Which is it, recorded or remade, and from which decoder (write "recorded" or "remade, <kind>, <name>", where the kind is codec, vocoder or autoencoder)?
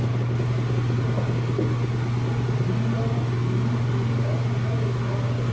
recorded